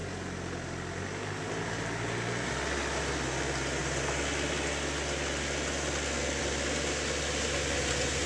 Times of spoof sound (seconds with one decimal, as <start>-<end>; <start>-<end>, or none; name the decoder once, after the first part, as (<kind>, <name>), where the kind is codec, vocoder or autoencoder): none